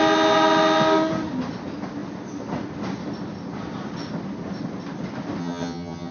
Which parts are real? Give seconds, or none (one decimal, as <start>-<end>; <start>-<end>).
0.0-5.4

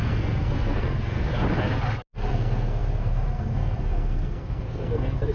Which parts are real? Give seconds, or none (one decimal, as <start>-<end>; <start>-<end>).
1.3-2.3

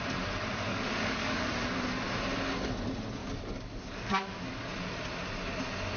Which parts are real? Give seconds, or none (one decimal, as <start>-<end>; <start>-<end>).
0.0-0.7; 1.5-3.2; 4.5-6.0